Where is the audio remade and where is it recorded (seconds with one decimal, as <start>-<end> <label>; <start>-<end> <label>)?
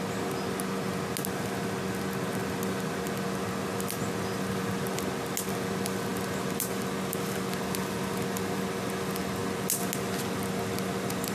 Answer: 0.0-11.3 recorded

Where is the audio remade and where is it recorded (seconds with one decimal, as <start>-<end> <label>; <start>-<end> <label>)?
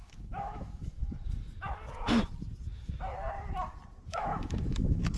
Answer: 0.0-1.0 remade; 1.0-4.1 recorded; 4.1-5.2 remade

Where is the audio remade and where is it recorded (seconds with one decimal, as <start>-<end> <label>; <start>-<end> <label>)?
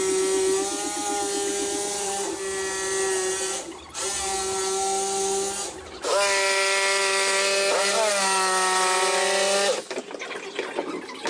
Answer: 0.0-11.3 recorded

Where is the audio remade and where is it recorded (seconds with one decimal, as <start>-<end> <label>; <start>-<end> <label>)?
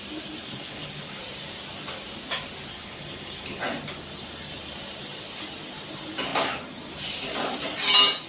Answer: 0.0-0.4 recorded; 0.4-1.2 remade; 1.2-2.7 recorded; 2.7-3.6 remade; 3.6-8.3 recorded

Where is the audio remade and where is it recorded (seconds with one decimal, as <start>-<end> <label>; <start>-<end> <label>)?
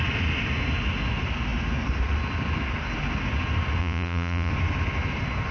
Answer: 0.0-3.8 recorded; 3.8-4.5 remade; 4.5-5.5 recorded